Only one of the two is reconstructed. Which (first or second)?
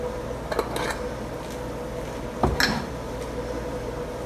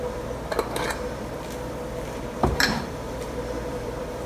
second